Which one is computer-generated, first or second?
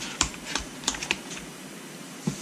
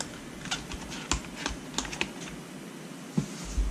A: first